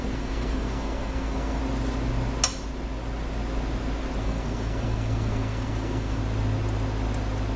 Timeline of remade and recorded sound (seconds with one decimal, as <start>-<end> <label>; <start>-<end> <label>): 0.0-1.6 remade; 1.6-4.2 recorded; 4.2-6.2 remade; 6.2-7.6 recorded